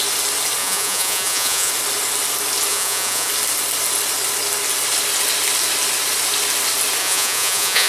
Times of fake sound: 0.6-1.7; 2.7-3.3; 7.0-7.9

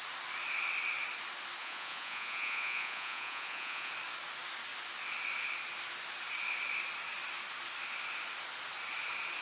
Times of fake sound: 1.6-3.9